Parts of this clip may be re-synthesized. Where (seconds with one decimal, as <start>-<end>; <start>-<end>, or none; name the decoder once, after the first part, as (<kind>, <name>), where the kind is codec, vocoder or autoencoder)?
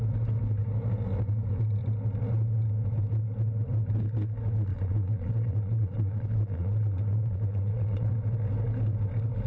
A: 4.7-8.1 (vocoder, Vocos)